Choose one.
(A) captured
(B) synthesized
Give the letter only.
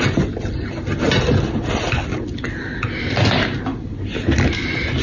A